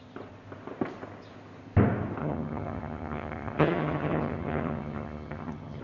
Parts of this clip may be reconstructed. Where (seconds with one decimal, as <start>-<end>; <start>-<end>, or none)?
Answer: 2.2-5.8